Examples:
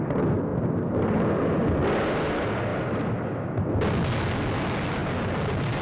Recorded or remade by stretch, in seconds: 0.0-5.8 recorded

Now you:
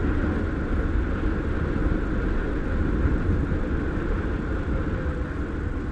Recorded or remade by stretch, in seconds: 0.0-5.9 recorded

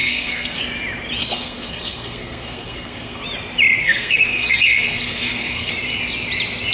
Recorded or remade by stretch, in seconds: 0.0-0.6 remade; 0.6-1.2 recorded; 1.2-3.2 remade; 3.2-3.8 recorded; 3.8-5.7 remade; 5.7-6.7 recorded

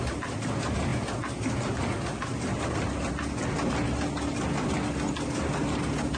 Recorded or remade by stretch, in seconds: 0.0-6.2 recorded

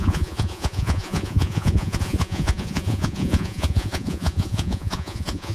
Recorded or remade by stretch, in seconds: 0.0-5.5 remade